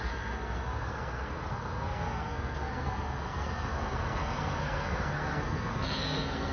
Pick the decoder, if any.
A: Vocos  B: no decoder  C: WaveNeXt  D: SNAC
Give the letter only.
D